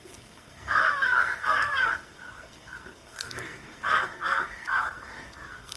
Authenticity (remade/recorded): remade